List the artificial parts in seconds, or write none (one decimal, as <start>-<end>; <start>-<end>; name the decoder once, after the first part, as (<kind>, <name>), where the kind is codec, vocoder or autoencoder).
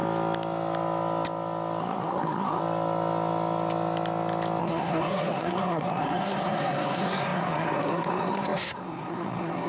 1.8-2.6 (codec, SNAC); 4.6-9.7